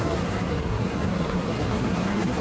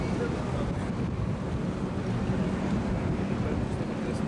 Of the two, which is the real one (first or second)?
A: second